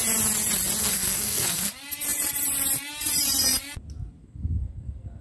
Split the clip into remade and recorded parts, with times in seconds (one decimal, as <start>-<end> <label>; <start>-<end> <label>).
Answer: 0.0-0.8 recorded; 0.8-1.7 remade; 1.7-4.2 recorded; 4.2-5.2 remade